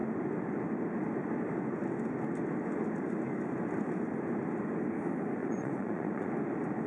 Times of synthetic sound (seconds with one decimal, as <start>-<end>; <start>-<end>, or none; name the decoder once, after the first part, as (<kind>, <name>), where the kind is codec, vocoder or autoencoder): 5.4-6.3 (vocoder, Vocos)